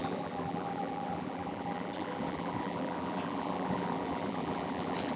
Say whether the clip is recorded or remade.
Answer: remade